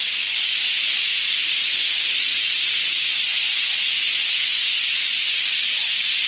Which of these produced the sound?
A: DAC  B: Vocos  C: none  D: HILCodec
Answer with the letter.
C